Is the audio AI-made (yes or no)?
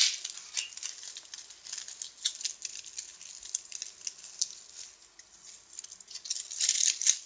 no